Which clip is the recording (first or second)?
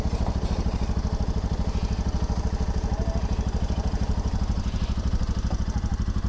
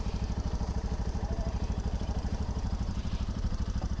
first